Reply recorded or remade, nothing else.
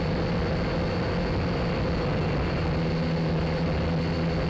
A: recorded